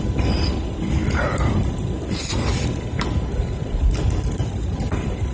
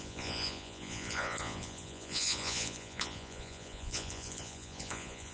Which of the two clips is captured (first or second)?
first